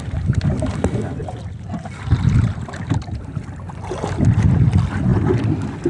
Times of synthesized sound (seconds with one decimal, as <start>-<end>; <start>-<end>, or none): none